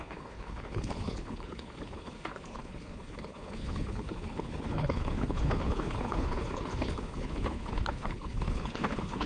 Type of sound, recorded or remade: remade